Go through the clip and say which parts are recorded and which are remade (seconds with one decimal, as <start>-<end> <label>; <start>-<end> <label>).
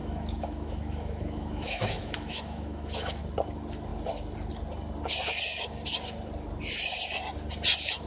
0.0-3.2 remade; 3.2-8.1 recorded